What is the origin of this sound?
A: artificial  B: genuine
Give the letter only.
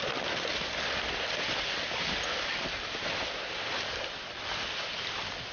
B